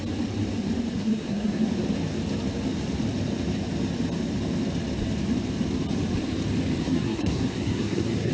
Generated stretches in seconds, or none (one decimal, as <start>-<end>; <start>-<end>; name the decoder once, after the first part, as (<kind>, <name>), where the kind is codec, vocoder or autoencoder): 0.9-1.7 (codec, SNAC); 6.8-8.3